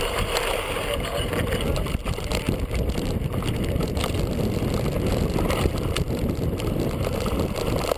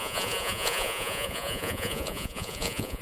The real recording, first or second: first